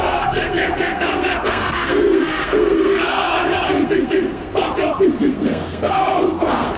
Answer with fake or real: fake